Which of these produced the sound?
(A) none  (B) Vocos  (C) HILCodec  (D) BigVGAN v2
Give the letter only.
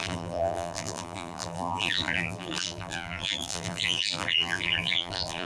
D